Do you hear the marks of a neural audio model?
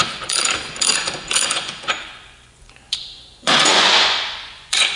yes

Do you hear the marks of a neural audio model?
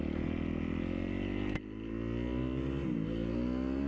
no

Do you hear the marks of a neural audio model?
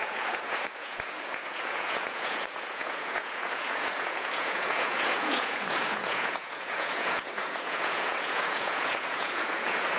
yes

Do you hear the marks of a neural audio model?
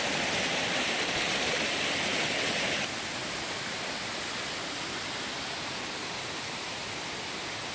no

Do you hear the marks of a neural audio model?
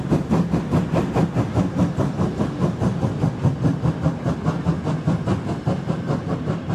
no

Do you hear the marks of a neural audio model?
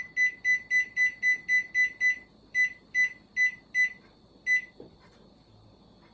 no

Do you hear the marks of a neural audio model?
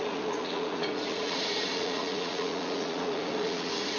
yes